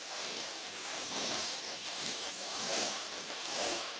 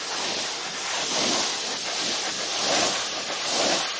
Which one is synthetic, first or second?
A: first